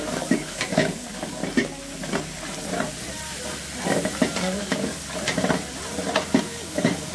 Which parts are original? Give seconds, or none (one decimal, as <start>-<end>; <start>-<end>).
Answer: 1.4-4.3; 4.9-6.4